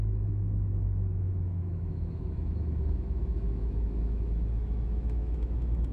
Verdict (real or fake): fake